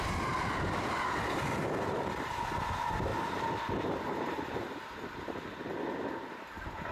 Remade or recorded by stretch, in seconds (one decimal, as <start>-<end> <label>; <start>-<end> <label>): 0.0-6.9 recorded